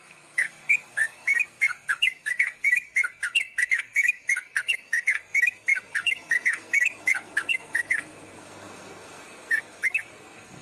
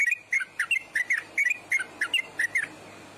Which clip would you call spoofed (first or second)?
first